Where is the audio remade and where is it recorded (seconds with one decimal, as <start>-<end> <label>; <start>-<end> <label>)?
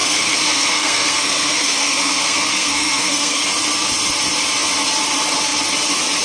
0.0-3.4 remade; 3.4-6.2 recorded